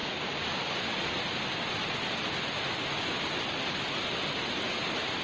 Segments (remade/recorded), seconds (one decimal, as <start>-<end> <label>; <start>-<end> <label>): 0.0-5.2 recorded